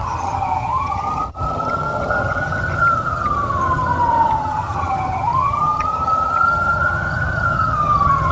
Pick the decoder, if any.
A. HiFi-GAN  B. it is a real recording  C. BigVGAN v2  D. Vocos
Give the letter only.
A